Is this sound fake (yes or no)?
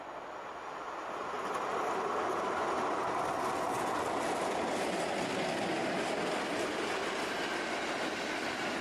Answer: no